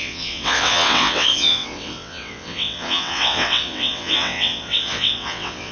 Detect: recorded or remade remade